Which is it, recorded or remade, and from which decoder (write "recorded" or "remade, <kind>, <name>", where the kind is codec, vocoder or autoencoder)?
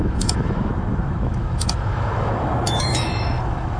remade, autoencoder, DAC-VAE